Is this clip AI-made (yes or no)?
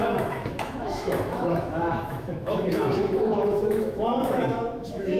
yes